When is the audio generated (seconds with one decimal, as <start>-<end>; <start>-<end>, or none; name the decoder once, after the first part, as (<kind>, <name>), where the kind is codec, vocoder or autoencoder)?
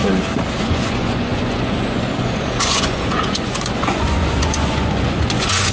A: 0.6-5.7 (vocoder, Vocos)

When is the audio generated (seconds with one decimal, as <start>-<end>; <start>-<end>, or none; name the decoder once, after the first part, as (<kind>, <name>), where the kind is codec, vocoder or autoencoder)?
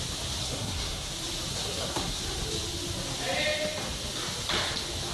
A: 0.4-1.1 (codec, SNAC); 1.5-2.2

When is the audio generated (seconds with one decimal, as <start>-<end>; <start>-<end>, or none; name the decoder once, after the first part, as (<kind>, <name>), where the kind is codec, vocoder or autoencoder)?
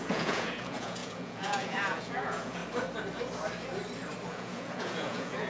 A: 0.0-2.6 (vocoder, Vocos); 4.3-5.5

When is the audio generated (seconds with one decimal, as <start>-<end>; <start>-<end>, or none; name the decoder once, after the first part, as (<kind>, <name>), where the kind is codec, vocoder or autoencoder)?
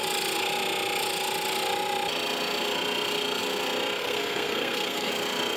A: 4.0-5.1 (codec, SNAC)